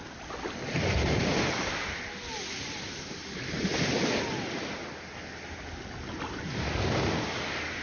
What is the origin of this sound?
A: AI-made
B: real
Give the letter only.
B